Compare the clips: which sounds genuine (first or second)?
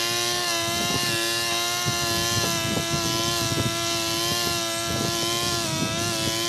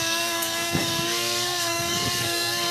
first